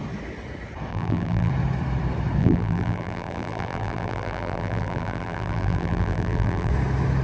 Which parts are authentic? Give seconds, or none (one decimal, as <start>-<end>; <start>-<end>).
0.0-0.9; 1.5-2.4; 6.7-7.2